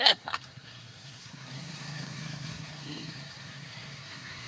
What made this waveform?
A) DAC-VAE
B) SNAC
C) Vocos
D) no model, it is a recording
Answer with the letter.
B